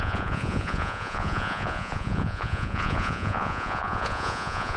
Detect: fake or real fake